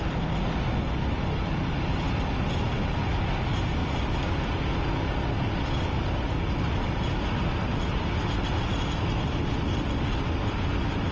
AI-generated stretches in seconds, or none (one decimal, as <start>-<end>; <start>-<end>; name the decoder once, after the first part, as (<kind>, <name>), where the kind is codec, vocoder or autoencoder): none